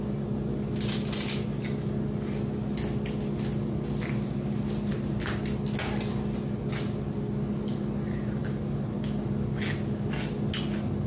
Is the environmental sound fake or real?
real